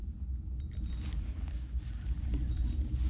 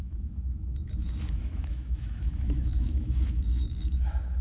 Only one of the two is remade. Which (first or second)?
second